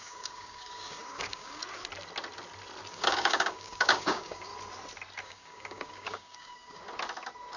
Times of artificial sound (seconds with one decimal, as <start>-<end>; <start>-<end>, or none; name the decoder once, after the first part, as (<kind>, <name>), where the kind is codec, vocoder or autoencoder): 0.0-1.6 (codec, DAC); 2.9-4.5; 5.2-6.8